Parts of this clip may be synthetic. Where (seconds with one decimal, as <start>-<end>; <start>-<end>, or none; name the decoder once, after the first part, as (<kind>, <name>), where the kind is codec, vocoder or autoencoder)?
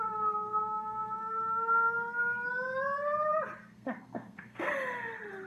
3.6-4.7 (codec, SNAC)